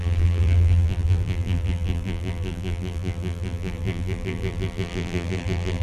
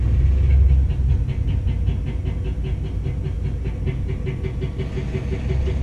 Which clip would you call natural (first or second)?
second